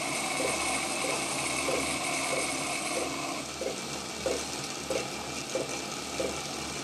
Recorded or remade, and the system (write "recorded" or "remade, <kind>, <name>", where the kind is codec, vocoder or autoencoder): recorded